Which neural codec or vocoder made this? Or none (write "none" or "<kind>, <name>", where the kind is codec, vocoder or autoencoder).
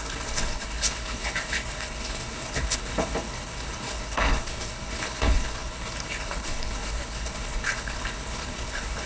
codec, HILCodec